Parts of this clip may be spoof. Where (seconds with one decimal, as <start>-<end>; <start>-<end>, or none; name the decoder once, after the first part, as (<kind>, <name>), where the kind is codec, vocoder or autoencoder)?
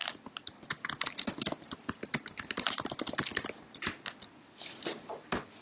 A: none